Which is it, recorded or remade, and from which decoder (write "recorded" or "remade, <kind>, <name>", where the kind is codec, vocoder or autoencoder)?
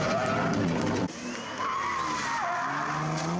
recorded